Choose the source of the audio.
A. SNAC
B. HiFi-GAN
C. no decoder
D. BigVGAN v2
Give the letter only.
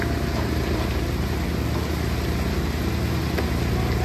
C